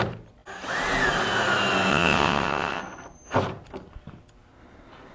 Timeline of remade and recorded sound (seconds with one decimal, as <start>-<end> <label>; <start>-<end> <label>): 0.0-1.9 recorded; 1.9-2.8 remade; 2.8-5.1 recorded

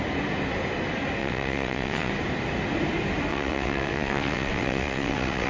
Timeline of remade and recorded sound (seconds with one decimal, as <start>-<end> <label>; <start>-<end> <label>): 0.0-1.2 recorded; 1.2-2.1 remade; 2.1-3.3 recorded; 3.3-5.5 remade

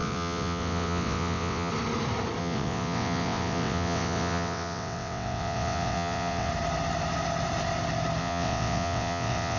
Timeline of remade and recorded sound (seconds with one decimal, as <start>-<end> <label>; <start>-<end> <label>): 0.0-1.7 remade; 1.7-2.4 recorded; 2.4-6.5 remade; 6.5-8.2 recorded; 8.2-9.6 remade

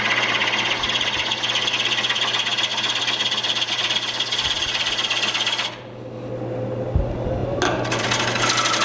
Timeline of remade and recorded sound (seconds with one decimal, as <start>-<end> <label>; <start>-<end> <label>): 0.0-8.8 recorded

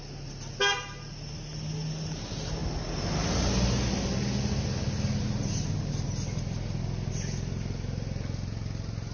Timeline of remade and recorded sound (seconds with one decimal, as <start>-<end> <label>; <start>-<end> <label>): 0.0-9.1 recorded

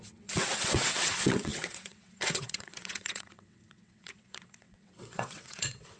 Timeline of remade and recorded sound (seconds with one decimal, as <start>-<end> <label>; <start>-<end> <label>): 0.0-6.0 remade